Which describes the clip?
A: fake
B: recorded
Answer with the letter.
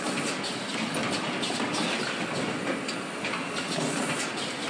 B